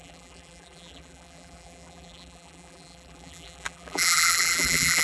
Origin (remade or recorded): remade